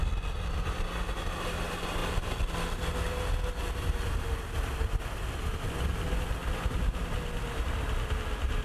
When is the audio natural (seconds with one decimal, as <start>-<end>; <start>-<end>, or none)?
0.0-8.6